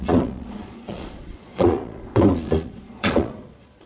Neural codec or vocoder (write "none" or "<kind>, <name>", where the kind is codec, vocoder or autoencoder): vocoder, Vocos